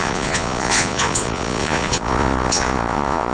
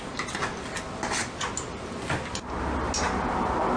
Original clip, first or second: second